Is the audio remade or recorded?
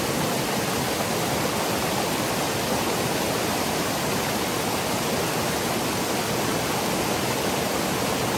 recorded